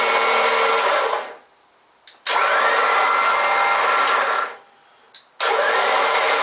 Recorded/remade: recorded